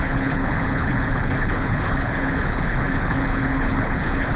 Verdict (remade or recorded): remade